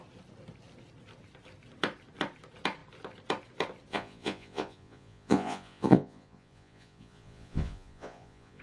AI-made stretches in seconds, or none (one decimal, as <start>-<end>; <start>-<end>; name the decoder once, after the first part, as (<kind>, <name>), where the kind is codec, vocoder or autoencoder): 3.9-8.6 (vocoder, Vocos)

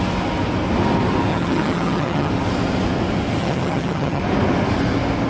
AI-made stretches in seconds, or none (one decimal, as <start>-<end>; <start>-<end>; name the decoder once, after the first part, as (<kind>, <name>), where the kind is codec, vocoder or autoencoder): 1.3-2.3 (vocoder, HiFi-GAN); 3.4-4.2

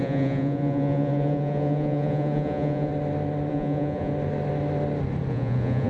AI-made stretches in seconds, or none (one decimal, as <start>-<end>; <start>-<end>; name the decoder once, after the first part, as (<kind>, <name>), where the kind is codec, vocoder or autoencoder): 0.0-2.9 (vocoder, Vocos); 3.5-4.1; 5.3-5.9

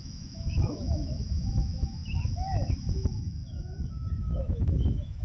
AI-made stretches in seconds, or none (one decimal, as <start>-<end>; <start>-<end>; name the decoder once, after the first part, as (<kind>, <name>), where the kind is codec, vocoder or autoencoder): 0.0-5.2 (autoencoder, DAC-VAE)

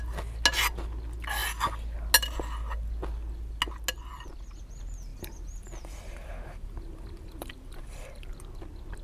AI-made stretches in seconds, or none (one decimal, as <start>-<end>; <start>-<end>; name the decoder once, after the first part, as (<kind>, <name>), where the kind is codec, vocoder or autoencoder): 5.1-8.3 (vocoder, BigVGAN v2)

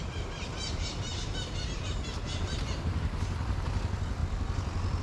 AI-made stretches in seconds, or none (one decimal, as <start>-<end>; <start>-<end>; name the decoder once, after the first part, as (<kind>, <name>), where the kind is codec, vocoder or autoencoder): 0.0-4.2 (vocoder, BigVGAN v2)

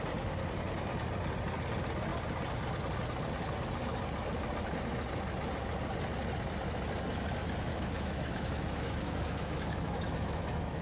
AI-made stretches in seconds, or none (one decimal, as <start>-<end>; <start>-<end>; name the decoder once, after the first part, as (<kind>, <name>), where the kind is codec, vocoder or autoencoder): 7.7-10.8 (autoencoder, DAC-VAE)

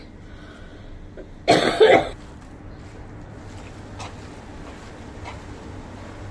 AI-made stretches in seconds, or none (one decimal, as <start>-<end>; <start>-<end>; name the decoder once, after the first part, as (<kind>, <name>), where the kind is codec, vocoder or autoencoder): none